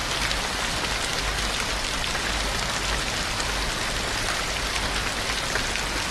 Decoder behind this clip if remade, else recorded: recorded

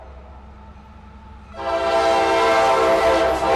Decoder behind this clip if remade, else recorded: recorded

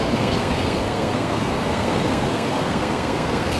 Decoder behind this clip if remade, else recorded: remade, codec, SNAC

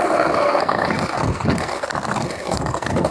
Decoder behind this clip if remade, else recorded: remade, codec, SNAC